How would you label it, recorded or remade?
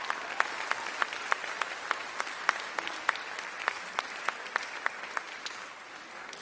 recorded